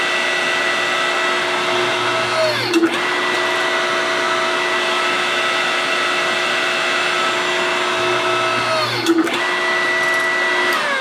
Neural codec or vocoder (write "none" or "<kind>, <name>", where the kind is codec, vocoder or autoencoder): none